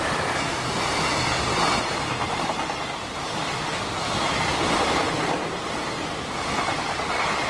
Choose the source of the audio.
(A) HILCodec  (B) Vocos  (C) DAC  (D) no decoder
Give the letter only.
D